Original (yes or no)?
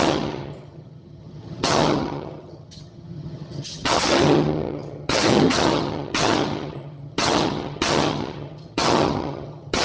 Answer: no